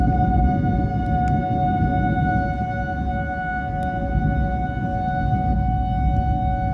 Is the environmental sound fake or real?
real